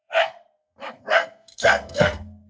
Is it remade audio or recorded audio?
remade